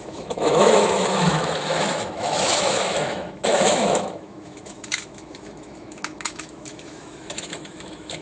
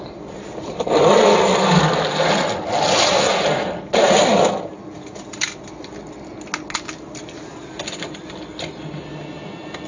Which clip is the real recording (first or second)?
second